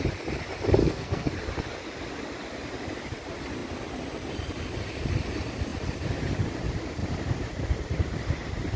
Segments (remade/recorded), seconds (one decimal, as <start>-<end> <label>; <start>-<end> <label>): 0.0-0.8 recorded; 0.8-1.3 remade; 1.3-8.8 recorded